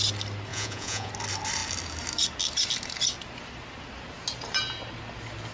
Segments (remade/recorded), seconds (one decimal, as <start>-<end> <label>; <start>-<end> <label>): 0.0-0.5 recorded; 0.5-1.1 remade; 1.1-5.5 recorded